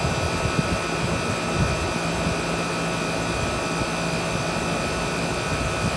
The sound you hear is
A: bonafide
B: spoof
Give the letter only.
A